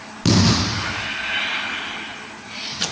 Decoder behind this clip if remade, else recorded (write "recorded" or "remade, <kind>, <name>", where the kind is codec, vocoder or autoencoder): recorded